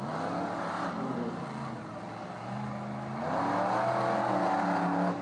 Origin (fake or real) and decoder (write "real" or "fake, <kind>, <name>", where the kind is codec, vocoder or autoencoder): real